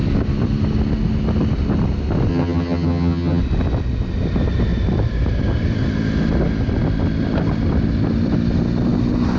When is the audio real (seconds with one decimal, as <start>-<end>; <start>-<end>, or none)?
0.0-2.3; 3.4-9.4